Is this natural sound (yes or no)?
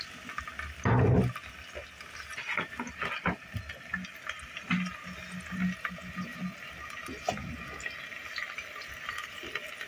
yes